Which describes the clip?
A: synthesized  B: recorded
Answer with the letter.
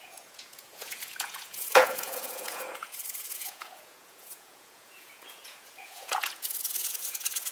A